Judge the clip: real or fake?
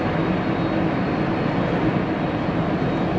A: real